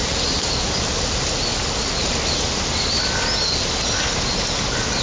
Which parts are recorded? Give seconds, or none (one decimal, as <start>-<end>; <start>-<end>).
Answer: 0.5-5.0